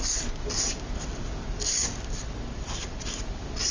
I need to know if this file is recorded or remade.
recorded